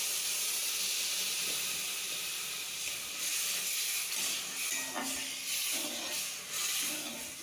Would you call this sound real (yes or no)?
yes